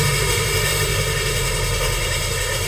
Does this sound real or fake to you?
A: fake